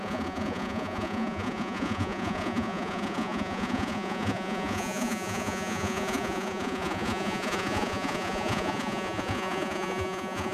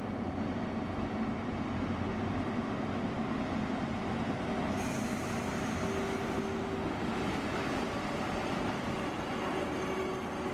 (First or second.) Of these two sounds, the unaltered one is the second